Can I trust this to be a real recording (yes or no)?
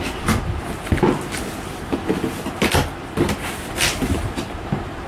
yes